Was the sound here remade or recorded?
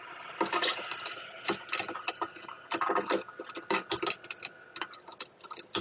recorded